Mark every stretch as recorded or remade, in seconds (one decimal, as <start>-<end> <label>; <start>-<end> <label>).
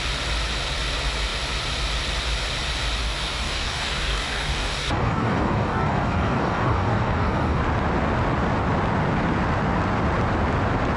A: 0.0-3.0 recorded; 3.0-7.6 remade; 7.6-11.0 recorded